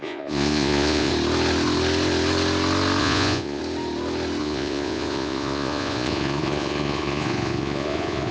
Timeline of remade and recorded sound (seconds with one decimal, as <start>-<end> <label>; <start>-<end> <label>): 0.0-1.1 remade; 1.1-3.0 recorded; 3.0-3.6 remade; 3.6-4.4 recorded; 4.4-8.3 remade